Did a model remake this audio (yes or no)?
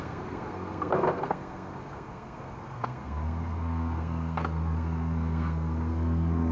yes